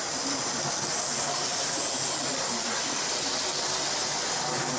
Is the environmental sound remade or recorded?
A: recorded